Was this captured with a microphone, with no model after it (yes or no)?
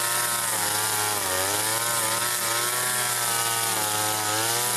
yes